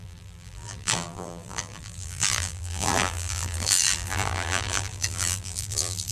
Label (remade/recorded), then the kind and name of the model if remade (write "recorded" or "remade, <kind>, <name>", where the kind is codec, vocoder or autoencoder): remade, vocoder, BigVGAN v2